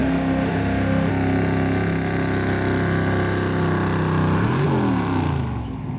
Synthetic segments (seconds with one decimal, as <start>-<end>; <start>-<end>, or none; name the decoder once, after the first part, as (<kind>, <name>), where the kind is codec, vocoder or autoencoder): 0.0-1.1 (autoencoder, DAC-VAE)